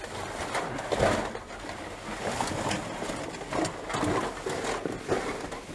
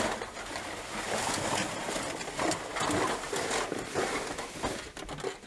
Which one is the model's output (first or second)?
second